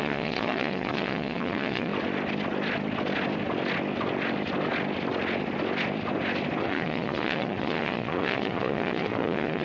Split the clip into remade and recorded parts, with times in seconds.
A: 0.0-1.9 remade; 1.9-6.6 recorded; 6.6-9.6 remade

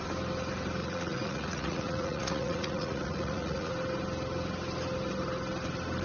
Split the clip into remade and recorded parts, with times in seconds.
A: 0.0-0.8 recorded; 0.8-3.7 remade; 3.7-6.0 recorded